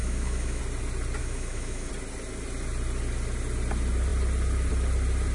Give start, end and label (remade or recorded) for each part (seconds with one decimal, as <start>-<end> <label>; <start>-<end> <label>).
0.0-0.6 remade; 0.6-1.2 recorded; 1.2-1.9 remade; 1.9-5.3 recorded